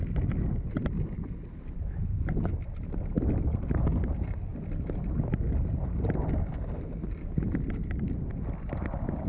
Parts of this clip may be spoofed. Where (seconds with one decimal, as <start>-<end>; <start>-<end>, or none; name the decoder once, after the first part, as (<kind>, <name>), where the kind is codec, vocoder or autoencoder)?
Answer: none